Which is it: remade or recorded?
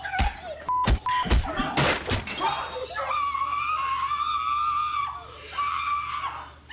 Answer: recorded